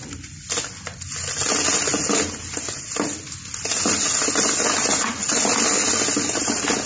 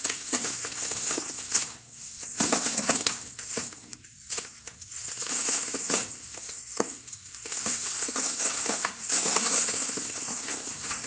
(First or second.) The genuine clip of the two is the first